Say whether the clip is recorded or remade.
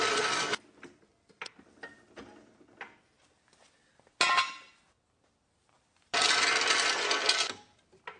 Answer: recorded